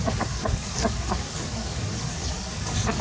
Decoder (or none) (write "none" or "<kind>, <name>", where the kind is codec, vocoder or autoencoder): codec, DAC